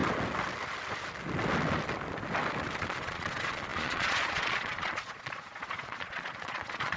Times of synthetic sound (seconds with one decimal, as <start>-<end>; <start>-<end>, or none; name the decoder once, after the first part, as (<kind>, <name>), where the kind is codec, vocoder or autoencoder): 2.8-7.0 (vocoder, Vocos)